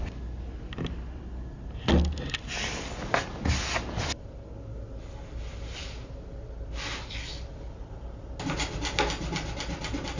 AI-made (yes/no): no